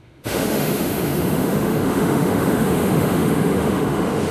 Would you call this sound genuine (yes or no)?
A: no